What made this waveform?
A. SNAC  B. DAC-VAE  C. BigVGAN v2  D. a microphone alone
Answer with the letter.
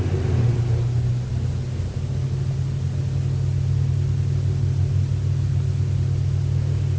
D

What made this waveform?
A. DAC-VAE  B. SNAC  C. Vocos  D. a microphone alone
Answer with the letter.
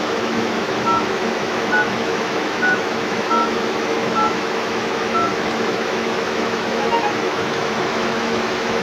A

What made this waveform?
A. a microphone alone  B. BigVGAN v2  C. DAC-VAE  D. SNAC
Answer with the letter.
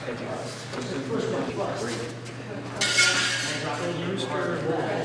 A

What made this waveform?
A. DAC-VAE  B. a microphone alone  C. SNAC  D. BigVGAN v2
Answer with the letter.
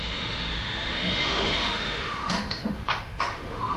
A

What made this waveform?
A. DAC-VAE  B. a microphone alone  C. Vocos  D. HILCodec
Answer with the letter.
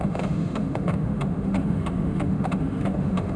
A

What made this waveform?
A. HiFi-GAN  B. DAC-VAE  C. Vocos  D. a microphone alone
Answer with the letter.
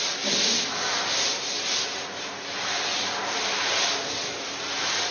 D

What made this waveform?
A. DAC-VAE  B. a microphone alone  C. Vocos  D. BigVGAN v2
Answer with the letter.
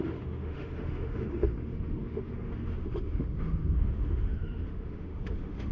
A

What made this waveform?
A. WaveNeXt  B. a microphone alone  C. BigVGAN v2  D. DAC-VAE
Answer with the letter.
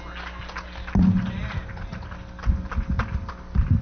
B